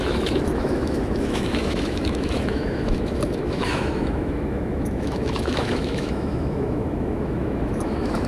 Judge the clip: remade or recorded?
remade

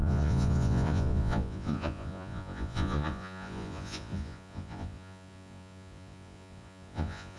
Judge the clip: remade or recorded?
remade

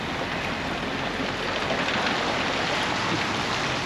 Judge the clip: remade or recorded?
recorded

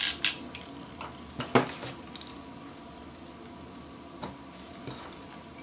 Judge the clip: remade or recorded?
recorded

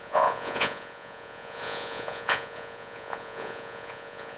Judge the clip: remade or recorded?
remade